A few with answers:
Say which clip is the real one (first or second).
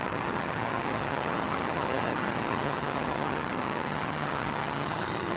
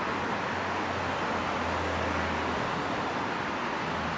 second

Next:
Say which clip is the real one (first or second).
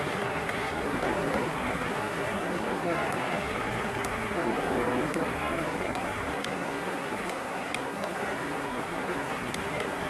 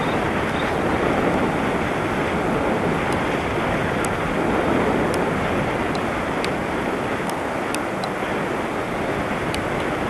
second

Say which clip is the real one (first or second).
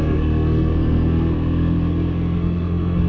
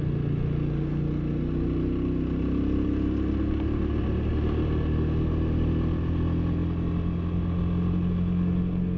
second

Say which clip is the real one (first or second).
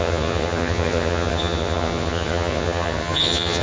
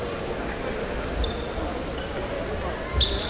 second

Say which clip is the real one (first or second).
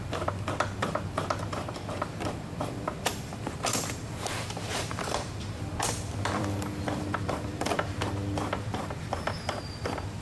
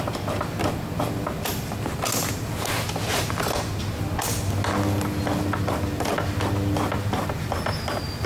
second